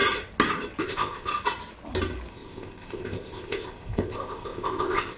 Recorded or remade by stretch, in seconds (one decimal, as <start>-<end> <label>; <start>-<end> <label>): 0.0-0.8 recorded; 0.8-1.3 remade; 1.3-2.3 recorded; 2.3-5.2 remade